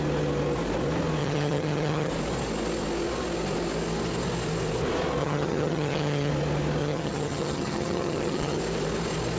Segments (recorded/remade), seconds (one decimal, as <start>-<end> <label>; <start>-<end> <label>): 0.0-1.2 recorded; 1.2-2.1 remade; 2.1-5.2 recorded; 5.2-6.3 remade; 6.3-6.8 recorded; 6.8-8.6 remade; 8.6-9.4 recorded